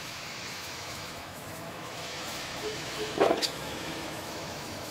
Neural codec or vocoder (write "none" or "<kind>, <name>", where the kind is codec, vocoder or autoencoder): autoencoder, DAC-VAE